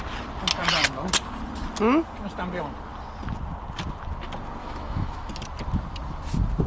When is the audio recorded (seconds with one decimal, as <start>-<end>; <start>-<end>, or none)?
0.0-4.6; 5.3-6.7